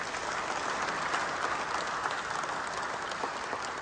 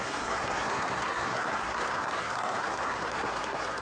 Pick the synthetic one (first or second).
second